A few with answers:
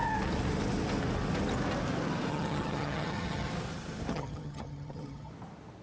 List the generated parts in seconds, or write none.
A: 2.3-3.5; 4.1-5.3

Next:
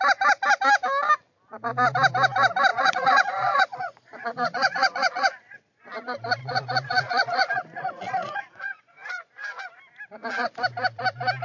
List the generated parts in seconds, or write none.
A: 2.7-5.9; 6.4-9.7

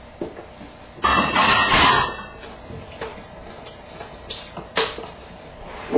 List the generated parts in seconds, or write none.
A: 3.1-6.0

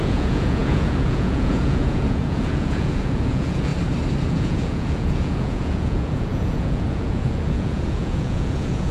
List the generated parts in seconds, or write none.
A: 0.0-3.7; 4.2-8.9

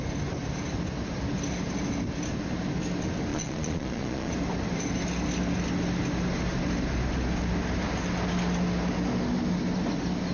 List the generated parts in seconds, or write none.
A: 3.3-4.3

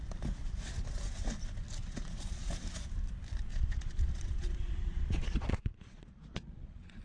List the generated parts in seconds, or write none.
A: 1.8-2.6; 3.5-7.0

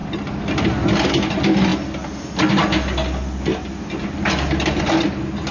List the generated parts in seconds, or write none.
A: none

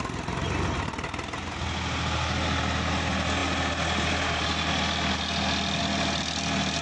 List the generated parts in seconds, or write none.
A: none